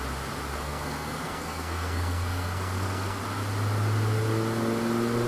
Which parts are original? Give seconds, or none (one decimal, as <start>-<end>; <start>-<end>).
0.0-0.5; 3.2-5.3